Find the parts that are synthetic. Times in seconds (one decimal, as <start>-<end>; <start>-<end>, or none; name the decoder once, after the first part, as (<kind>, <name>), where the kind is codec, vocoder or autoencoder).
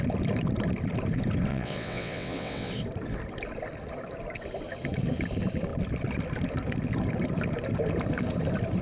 1.5-2.7 (vocoder, WaveNeXt)